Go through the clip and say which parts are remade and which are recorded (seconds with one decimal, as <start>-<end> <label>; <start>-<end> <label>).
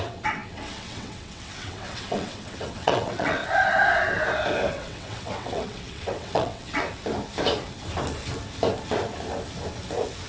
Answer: 0.0-3.4 remade; 3.4-4.7 recorded; 4.7-6.9 remade; 6.9-10.3 recorded